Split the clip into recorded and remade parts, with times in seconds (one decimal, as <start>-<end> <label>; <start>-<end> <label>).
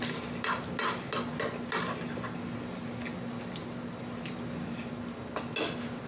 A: 0.0-6.1 recorded